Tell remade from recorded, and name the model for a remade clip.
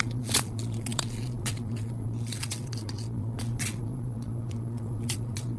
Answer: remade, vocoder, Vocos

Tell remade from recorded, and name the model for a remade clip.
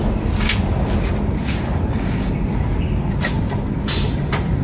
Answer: recorded